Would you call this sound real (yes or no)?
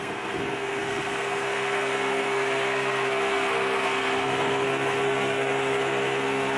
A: no